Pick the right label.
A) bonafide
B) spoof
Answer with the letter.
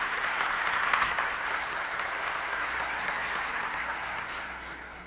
B